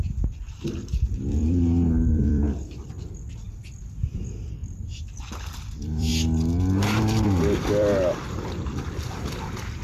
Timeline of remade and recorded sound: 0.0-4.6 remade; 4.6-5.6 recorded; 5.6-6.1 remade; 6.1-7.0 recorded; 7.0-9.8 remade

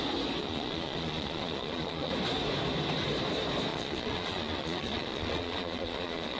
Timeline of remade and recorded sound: 0.0-0.4 recorded; 0.4-2.1 remade; 2.1-3.7 recorded; 3.7-6.4 remade

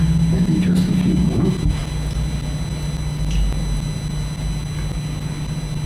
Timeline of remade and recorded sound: 0.0-5.9 recorded

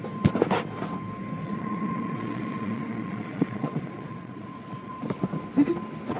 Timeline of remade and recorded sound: 0.0-1.4 recorded; 1.4-5.1 remade; 5.1-6.2 recorded